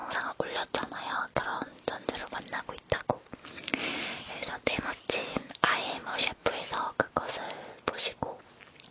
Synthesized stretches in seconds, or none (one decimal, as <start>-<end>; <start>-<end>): 0.0-1.4; 2.2-6.6